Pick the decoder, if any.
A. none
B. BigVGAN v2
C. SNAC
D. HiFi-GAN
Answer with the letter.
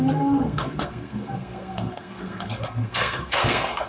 C